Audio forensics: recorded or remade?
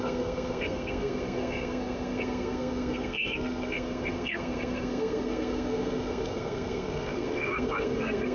remade